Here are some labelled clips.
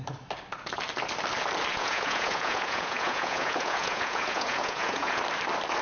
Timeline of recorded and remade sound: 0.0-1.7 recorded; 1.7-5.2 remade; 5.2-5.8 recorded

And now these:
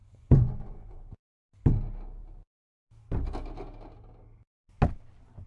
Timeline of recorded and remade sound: 0.0-1.0 remade; 1.0-5.5 recorded

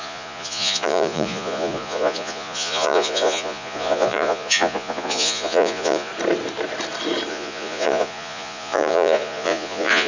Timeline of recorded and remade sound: 0.0-6.1 remade; 6.1-7.3 recorded; 7.3-10.1 remade

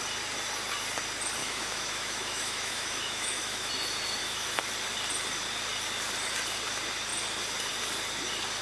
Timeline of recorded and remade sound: 0.0-1.4 recorded; 1.4-3.7 remade; 3.7-4.2 recorded; 4.2-4.7 remade; 4.7-8.6 recorded

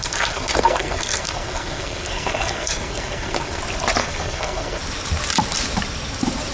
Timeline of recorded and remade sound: 0.0-3.6 remade; 3.6-4.0 recorded; 4.0-4.8 remade; 4.8-6.5 recorded